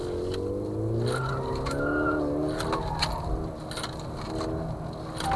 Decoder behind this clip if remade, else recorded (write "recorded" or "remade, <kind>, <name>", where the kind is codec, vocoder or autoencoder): recorded